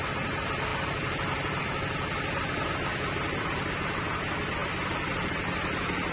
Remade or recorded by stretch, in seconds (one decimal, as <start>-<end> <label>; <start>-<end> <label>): 0.0-0.7 recorded; 0.7-1.6 remade; 1.6-2.9 recorded; 2.9-3.7 remade; 3.7-4.6 recorded; 4.6-5.3 remade; 5.3-6.1 recorded